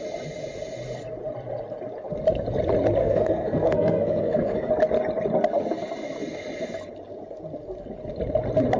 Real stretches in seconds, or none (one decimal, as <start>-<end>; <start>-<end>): 0.0-3.0; 4.7-8.8